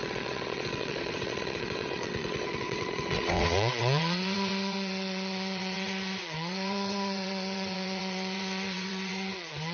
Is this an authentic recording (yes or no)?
no